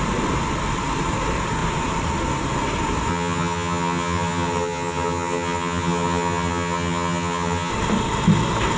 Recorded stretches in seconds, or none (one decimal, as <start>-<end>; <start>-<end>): 0.0-3.1; 7.7-8.8